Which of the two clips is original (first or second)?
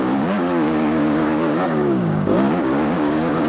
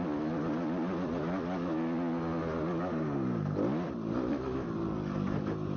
second